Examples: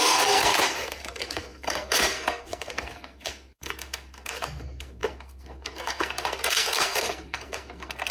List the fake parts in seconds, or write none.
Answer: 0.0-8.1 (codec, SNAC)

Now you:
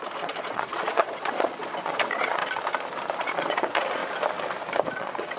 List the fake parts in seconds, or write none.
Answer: 0.0-2.4 (vocoder, Vocos); 3.1-4.0; 5.0-5.4

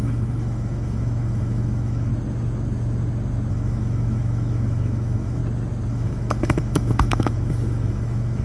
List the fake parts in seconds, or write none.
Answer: 0.0-2.1 (autoencoder, DAC-VAE); 3.5-5.4; 5.9-8.4

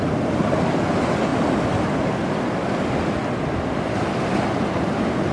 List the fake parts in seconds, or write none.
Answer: none

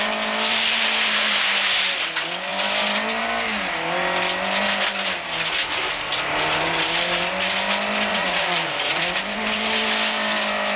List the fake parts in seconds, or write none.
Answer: 8.1-9.0 (vocoder, Vocos)

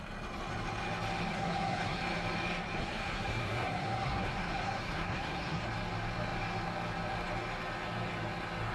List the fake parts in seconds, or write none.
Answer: 1.3-2.0 (codec, SNAC); 2.8-5.6